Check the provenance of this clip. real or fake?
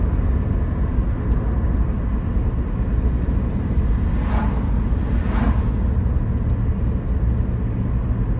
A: real